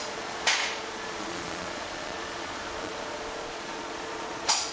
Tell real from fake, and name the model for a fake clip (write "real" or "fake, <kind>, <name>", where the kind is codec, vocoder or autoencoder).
fake, vocoder, Vocos